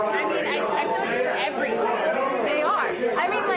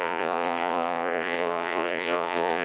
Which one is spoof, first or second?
second